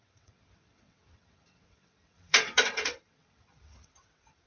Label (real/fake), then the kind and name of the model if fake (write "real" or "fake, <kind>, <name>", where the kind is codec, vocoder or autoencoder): fake, vocoder, WaveNeXt